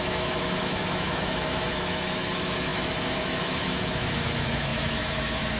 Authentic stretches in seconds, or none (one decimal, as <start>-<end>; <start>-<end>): none